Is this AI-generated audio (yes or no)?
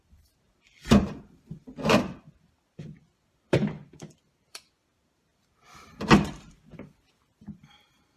yes